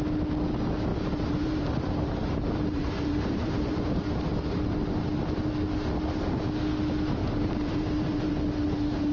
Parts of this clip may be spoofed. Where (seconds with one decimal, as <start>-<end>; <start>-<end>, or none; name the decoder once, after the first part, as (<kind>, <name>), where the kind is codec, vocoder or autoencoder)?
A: 0.9-3.8 (vocoder, BigVGAN v2); 7.2-8.3